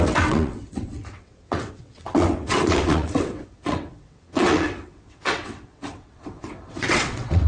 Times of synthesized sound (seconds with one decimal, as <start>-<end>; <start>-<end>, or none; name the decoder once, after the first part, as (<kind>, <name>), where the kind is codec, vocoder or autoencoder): 0.0-7.5 (vocoder, WaveNeXt)